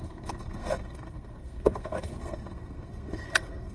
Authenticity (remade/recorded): remade